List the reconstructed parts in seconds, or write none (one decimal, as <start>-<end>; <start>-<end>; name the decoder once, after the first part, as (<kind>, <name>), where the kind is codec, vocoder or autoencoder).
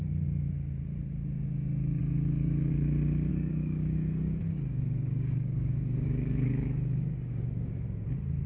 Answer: 2.0-2.7 (codec, DAC); 3.3-7.7